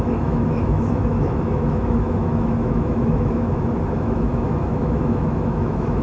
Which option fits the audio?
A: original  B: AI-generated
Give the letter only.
B